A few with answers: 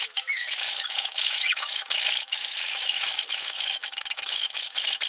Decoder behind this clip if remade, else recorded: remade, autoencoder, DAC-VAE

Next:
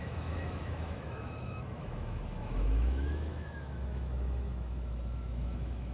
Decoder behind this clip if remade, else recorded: remade, autoencoder, DAC-VAE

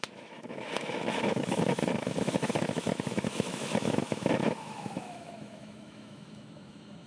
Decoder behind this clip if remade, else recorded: remade, autoencoder, DAC-VAE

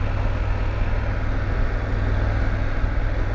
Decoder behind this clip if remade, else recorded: recorded